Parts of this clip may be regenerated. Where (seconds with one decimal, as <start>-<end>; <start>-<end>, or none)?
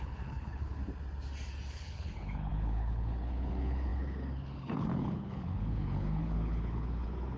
0.0-0.8; 1.7-7.4